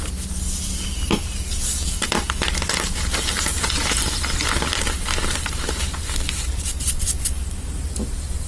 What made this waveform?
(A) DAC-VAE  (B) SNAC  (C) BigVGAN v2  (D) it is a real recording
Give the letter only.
C